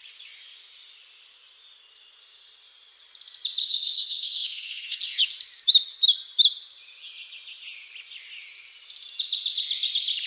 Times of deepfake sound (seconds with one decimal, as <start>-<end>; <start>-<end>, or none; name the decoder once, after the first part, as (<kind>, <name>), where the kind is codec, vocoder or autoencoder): 3.6-5.0 (codec, SNAC)